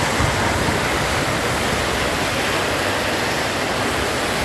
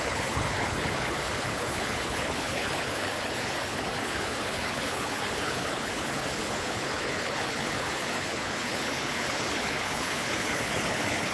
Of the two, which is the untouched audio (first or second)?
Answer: first